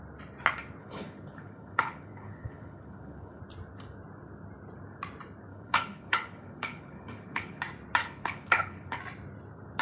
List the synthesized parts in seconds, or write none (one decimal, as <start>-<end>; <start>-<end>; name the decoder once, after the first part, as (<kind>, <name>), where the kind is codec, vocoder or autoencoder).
0.8-3.4 (codec, HILCodec); 5.5-7.6; 8.0-9.0